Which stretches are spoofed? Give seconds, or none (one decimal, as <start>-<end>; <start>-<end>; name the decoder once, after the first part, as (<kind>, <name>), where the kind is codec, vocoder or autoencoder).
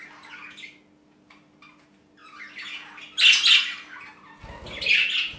none